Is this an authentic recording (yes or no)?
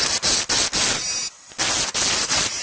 yes